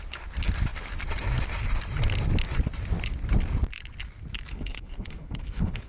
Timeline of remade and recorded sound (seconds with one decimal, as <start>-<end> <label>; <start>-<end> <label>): 0.0-4.5 recorded; 4.5-5.9 remade